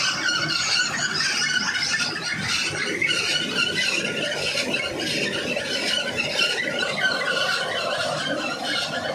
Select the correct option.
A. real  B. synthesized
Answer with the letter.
A